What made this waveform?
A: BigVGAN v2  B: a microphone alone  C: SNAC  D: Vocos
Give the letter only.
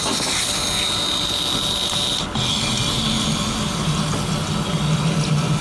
B